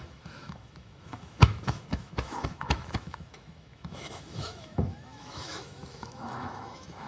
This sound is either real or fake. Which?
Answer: fake